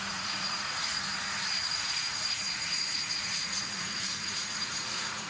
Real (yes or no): no